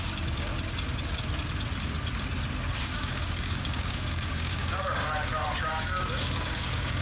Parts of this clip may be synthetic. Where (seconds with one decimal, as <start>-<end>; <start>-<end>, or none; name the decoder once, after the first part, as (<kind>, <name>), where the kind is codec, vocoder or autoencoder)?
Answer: 0.0-0.5 (codec, DAC); 2.8-5.0; 5.7-7.0